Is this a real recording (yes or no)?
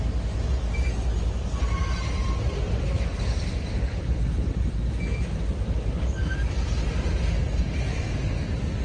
yes